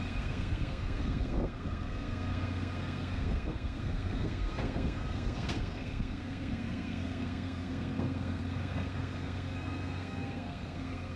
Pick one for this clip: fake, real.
fake